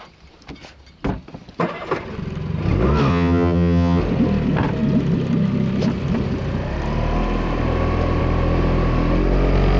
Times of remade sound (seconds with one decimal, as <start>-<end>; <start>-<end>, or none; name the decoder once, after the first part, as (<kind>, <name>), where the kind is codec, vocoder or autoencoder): 3.1-4.0 (vocoder, HiFi-GAN)